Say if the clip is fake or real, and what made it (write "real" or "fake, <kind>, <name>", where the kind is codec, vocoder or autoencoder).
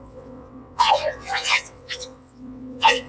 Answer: fake, vocoder, WaveNeXt